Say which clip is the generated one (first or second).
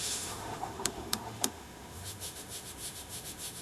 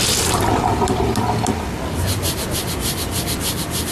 first